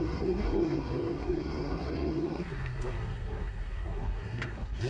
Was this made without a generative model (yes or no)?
no